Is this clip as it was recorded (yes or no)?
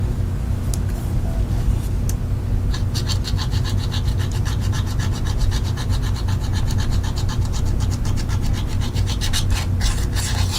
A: yes